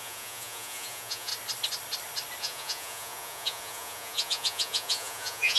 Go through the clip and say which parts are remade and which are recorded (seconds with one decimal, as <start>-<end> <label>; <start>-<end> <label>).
0.0-1.3 remade; 1.3-2.4 recorded; 2.4-5.6 remade